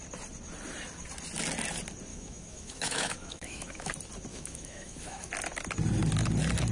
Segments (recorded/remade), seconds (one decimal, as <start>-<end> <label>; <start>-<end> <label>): 0.0-2.1 recorded; 2.1-3.9 remade; 3.9-4.3 recorded; 4.3-5.3 remade; 5.3-6.7 recorded